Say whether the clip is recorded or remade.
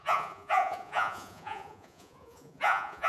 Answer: remade